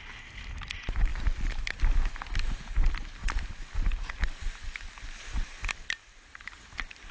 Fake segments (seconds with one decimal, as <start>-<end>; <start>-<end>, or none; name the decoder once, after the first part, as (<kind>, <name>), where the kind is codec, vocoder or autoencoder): none